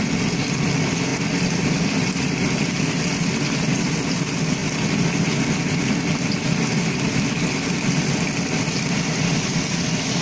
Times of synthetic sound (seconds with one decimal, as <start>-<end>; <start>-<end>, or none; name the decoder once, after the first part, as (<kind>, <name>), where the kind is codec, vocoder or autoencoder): none